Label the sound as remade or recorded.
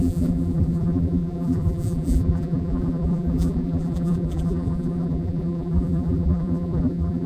remade